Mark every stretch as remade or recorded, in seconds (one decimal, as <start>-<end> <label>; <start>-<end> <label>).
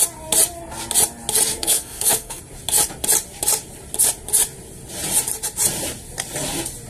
0.0-1.5 recorded; 1.5-2.4 remade; 2.4-6.9 recorded